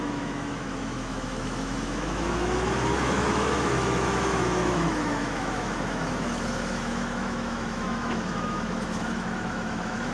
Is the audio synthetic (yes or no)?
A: yes